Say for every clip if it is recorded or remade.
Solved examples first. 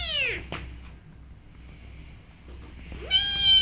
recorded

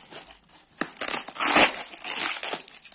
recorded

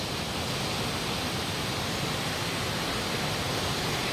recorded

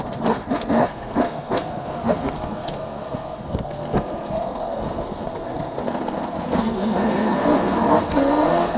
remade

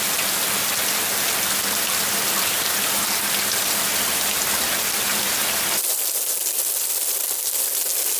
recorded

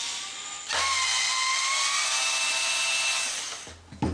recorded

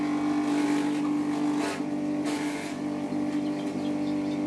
recorded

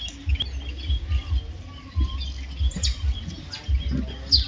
recorded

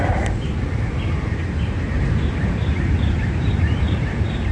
remade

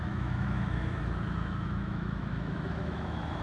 remade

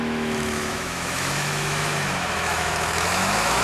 remade